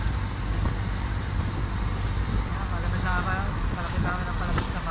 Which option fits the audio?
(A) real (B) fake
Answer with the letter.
A